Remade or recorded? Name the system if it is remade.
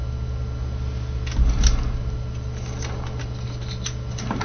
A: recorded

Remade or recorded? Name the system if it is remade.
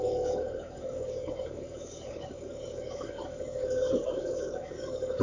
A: remade, codec, DAC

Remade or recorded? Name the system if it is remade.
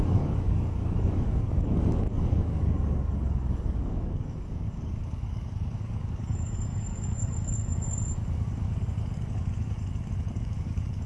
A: remade, codec, DAC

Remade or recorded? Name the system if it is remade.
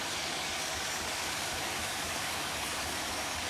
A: remade, codec, DAC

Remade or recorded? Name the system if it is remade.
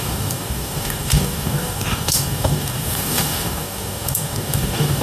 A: remade, codec, DAC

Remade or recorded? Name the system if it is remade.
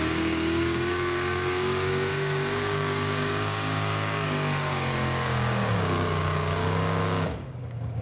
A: remade, codec, DAC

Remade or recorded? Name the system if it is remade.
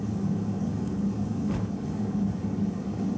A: remade, codec, DAC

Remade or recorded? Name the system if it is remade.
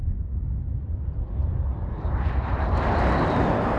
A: recorded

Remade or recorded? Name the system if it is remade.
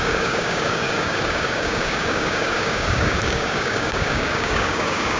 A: remade, codec, DAC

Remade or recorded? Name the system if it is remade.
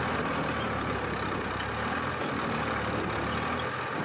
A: recorded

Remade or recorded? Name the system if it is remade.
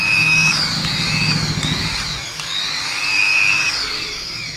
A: remade, codec, DAC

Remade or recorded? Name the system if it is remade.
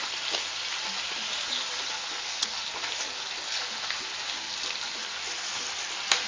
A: recorded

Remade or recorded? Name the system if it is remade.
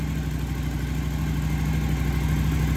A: recorded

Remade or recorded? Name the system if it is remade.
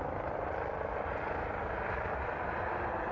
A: recorded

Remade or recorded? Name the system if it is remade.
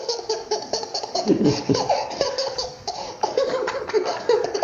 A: remade, codec, DAC